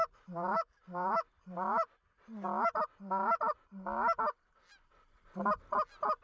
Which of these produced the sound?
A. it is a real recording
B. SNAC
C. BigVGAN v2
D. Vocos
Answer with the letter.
A